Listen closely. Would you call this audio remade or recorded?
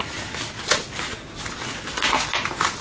recorded